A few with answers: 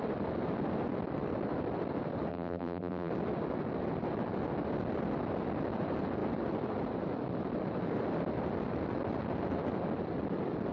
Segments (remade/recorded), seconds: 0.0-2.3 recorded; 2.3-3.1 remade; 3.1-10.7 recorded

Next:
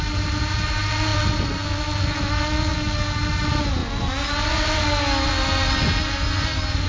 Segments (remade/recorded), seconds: 0.0-6.9 recorded

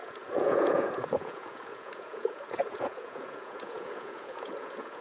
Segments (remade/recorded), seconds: 0.0-5.0 remade

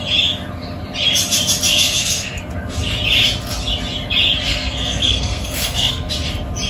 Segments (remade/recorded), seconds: 0.0-1.7 recorded; 1.7-2.5 remade; 2.5-4.5 recorded; 4.5-6.1 remade; 6.1-6.7 recorded

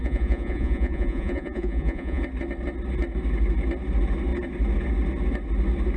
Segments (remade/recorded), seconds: 0.0-2.2 remade; 2.2-6.0 recorded

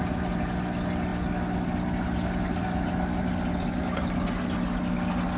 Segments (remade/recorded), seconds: 0.0-5.4 recorded

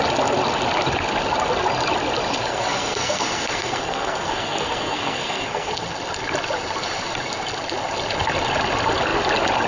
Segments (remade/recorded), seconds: 0.0-2.5 recorded; 2.5-5.7 remade; 5.7-9.7 recorded